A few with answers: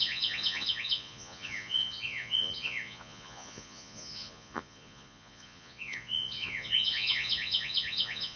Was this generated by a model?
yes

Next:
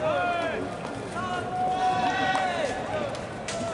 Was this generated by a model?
no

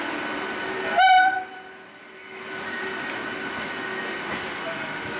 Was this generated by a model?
no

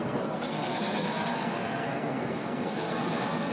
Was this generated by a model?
yes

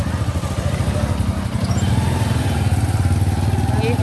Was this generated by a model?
no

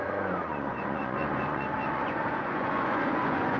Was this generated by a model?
yes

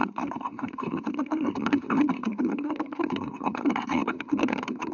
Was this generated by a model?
yes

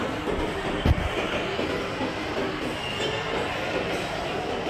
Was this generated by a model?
no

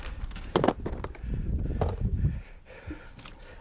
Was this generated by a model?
no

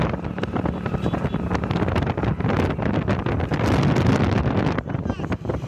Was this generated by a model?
no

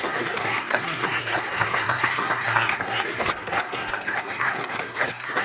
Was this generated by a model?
yes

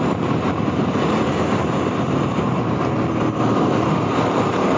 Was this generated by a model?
yes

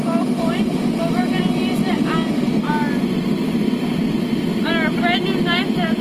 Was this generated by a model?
no